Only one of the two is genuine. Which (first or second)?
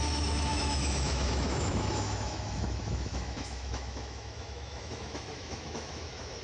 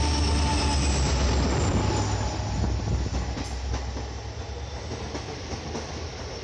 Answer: second